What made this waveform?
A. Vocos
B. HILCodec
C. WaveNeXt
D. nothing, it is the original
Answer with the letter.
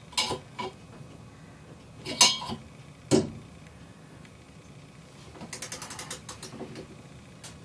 D